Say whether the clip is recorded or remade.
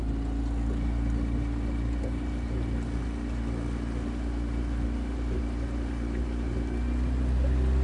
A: recorded